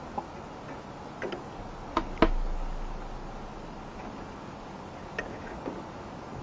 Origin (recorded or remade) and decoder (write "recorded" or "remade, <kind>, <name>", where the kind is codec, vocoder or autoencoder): recorded